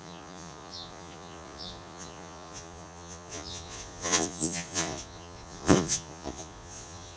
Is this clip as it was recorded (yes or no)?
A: no